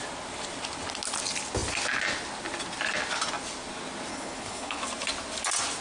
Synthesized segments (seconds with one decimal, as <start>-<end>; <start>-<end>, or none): 4.1-4.8